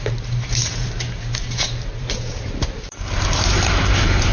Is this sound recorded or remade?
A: remade